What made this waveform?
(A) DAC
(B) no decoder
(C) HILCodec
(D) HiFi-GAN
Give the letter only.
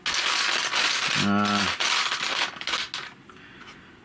B